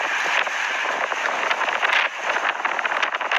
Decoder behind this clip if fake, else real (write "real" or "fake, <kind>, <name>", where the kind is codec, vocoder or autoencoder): real